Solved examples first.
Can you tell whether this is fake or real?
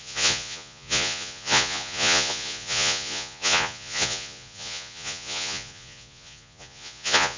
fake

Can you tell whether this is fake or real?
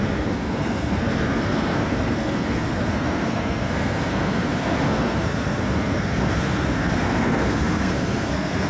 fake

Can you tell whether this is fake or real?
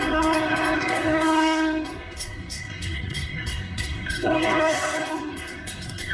fake